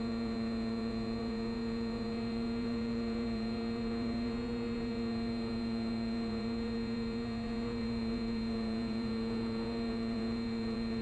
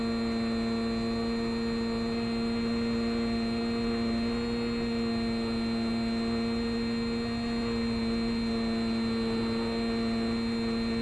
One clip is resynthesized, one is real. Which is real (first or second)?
second